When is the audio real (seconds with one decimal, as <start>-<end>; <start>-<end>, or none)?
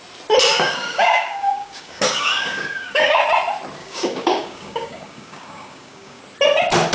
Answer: 0.0-0.5; 3.2-3.8; 6.2-6.9